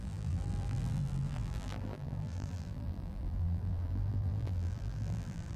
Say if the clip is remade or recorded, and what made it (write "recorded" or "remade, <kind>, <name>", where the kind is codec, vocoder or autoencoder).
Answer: remade, vocoder, BigVGAN v2